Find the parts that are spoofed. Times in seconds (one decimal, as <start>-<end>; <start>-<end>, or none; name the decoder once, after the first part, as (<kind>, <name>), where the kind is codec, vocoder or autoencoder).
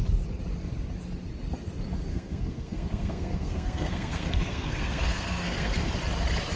2.1-5.9 (codec, SNAC)